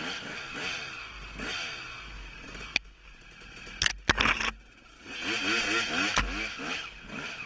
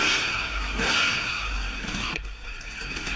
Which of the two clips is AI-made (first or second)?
second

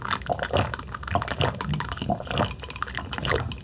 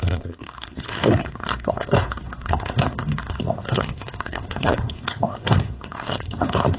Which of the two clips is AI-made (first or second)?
second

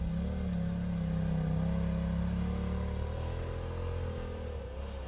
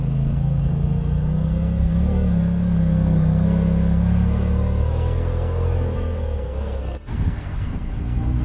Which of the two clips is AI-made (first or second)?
second